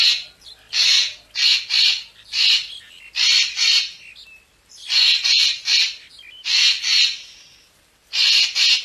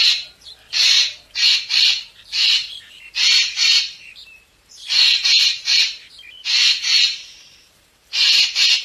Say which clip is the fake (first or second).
second